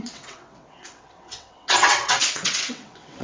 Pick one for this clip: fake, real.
fake